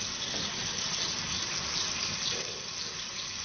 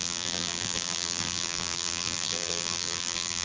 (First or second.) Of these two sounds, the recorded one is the first